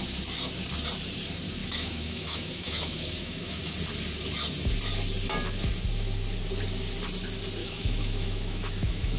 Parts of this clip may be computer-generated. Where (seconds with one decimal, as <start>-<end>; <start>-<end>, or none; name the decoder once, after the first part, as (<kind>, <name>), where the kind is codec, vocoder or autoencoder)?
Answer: 1.6-3.6 (autoencoder, DAC-VAE); 7.6-9.2